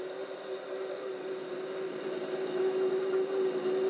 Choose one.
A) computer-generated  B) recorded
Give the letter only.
B